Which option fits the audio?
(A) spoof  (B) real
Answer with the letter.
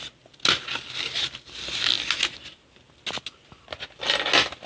B